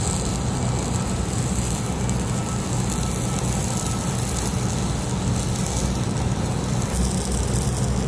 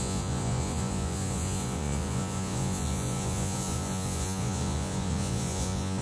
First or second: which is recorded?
first